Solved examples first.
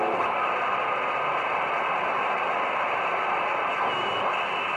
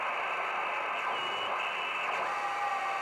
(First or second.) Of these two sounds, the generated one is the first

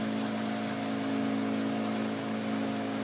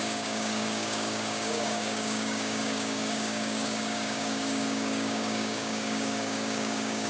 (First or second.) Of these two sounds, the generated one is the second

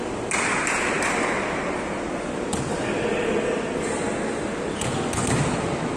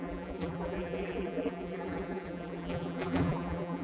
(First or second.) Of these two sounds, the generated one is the second